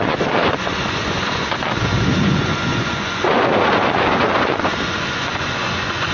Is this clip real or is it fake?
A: fake